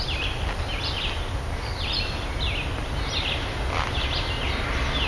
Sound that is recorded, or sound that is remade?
recorded